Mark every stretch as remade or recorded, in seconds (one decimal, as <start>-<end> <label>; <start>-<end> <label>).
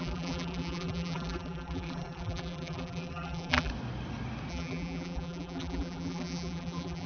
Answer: 0.0-3.7 remade; 3.7-4.5 recorded; 4.5-7.1 remade